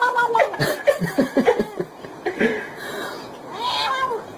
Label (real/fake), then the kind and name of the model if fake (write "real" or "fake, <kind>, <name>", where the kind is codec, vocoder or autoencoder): real